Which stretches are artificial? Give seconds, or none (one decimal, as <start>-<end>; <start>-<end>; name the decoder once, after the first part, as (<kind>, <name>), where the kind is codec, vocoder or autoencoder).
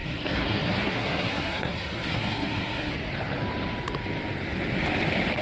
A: 0.0-2.9 (codec, SNAC)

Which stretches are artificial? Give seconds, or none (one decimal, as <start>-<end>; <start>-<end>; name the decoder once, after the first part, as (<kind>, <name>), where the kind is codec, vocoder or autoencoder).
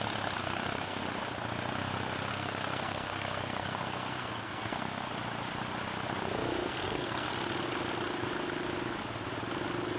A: 0.4-1.0 (codec, SNAC); 2.3-5.1; 6.6-7.3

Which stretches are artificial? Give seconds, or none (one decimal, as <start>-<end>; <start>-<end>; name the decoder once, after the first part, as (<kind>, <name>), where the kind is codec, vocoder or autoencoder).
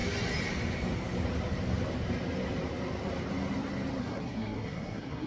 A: 4.0-5.3 (codec, SNAC)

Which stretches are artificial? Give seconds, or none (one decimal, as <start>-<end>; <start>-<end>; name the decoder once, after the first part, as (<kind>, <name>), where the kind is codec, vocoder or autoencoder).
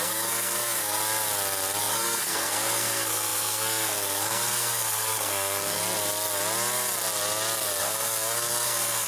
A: 0.0-1.0 (codec, SNAC); 1.8-5.8; 7.8-9.1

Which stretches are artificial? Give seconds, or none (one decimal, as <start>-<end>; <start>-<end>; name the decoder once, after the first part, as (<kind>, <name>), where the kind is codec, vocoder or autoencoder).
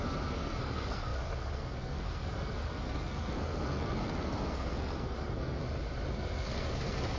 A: 0.0-5.6 (codec, SNAC); 6.1-7.2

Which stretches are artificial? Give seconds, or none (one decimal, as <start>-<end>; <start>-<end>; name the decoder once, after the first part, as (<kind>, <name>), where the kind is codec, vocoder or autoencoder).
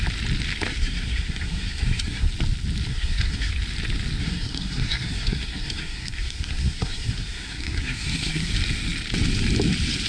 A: 0.7-2.3 (codec, SNAC); 2.9-3.5; 4.2-8.5